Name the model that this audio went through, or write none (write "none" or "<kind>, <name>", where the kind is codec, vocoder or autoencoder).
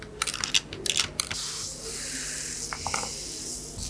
none